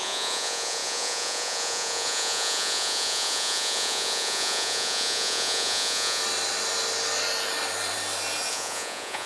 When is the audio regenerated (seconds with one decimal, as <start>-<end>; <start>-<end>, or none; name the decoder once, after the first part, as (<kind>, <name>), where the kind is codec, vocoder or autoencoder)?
0.0-6.2 (vocoder, Vocos); 8.5-9.3